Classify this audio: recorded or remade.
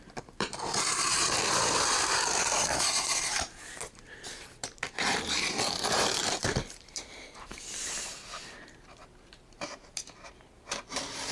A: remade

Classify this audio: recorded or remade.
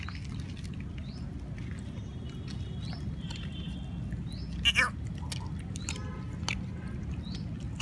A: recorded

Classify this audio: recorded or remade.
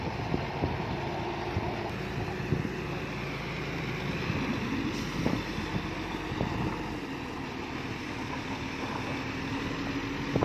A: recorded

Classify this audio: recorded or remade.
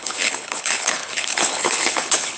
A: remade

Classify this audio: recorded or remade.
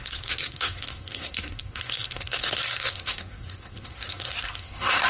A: remade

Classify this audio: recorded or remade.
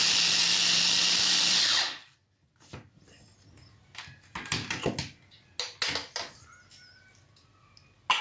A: recorded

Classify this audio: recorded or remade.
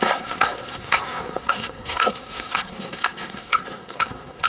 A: remade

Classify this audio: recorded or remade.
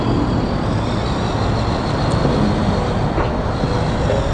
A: recorded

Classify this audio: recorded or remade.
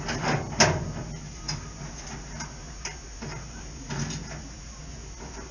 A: recorded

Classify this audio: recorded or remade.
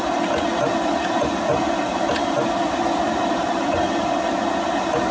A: recorded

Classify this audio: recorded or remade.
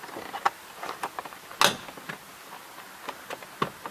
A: recorded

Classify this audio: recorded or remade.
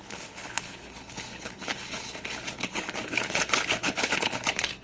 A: remade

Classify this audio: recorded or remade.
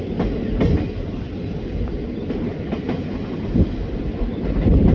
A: recorded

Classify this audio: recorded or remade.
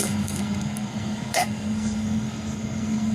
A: remade